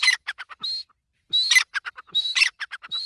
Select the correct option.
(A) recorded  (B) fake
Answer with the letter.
A